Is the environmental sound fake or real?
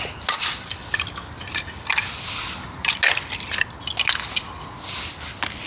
real